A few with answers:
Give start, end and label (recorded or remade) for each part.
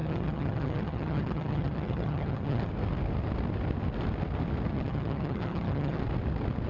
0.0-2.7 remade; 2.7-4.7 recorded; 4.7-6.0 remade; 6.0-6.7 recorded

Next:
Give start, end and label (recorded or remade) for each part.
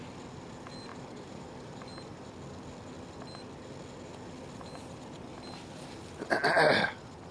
0.0-0.9 recorded; 0.9-2.3 remade; 2.3-7.3 recorded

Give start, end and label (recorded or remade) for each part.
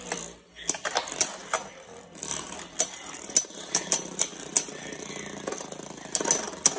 0.0-6.8 recorded